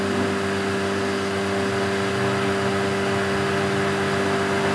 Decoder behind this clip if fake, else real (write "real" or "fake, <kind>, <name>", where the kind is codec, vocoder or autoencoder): real